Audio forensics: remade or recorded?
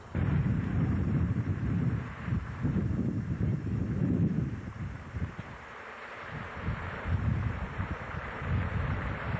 remade